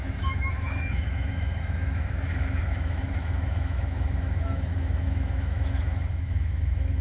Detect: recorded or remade remade